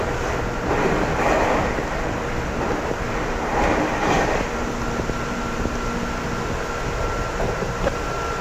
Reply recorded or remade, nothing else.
recorded